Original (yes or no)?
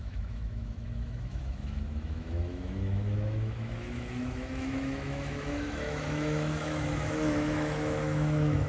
no